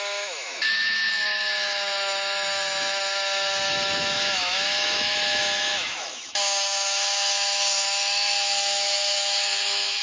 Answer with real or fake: fake